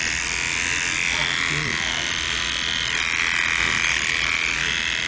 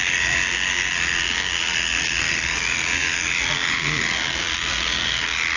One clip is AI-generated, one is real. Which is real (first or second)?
first